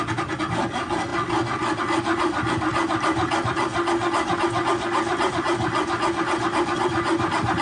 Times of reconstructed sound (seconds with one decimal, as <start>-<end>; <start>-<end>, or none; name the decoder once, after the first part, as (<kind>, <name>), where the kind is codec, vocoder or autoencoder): none